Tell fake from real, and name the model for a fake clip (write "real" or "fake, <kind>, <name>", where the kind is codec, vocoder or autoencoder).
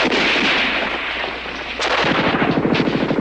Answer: real